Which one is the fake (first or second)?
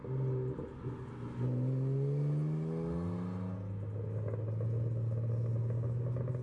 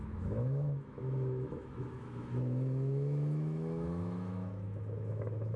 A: second